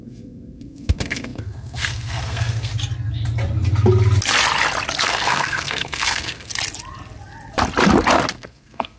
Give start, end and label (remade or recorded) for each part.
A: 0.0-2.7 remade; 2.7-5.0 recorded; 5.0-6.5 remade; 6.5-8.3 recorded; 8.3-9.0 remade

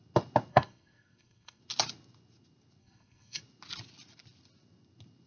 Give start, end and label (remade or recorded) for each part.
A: 0.0-0.5 recorded; 0.5-1.6 remade; 1.6-2.8 recorded; 2.8-3.4 remade; 3.4-5.3 recorded

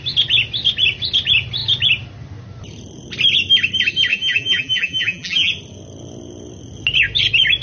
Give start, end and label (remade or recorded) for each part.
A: 0.0-4.1 recorded; 4.1-5.5 remade; 5.5-7.6 recorded

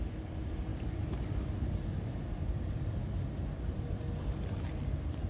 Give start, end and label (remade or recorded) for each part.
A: 0.0-5.3 recorded